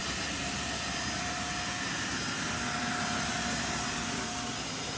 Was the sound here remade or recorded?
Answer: recorded